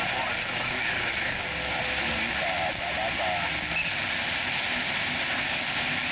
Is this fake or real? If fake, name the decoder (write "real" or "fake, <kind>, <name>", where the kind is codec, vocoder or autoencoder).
real